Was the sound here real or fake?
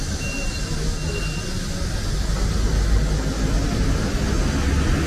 real